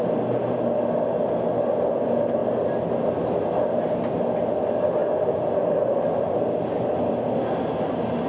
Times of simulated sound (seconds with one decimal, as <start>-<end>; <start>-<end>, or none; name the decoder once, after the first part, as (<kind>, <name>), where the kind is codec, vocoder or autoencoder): none